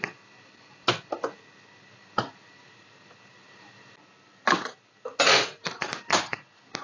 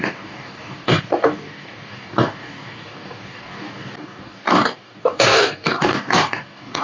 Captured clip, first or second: first